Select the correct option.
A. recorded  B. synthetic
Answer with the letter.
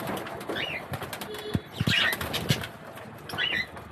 A